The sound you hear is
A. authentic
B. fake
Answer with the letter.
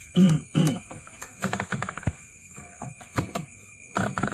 B